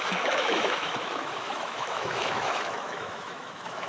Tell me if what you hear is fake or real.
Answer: fake